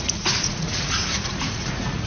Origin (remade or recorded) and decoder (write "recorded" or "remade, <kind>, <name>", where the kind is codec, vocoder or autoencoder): remade, vocoder, Vocos